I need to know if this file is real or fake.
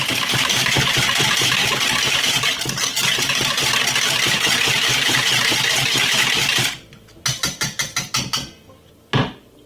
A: real